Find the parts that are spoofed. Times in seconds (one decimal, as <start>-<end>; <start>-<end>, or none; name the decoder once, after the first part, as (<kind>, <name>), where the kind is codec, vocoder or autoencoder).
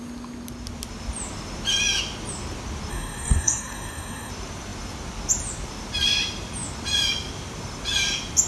2.9-4.3 (codec, SNAC)